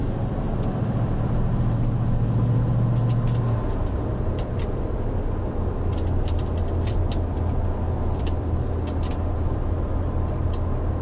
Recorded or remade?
recorded